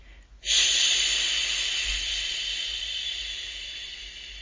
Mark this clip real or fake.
real